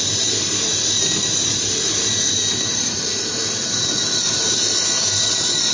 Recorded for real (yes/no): no